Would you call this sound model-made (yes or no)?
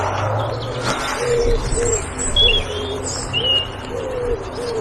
no